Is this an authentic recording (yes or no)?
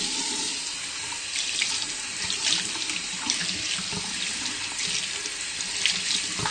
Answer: yes